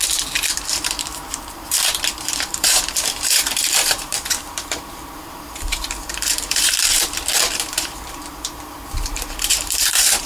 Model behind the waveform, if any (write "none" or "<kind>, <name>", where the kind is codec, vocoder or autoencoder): vocoder, BigVGAN v2